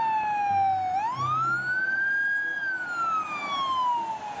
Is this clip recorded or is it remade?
recorded